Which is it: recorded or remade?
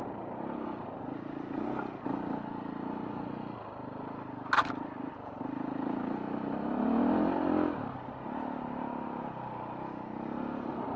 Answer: recorded